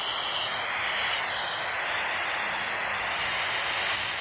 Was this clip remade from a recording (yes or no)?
no